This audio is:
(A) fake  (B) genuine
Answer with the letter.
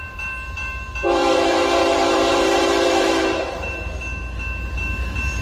A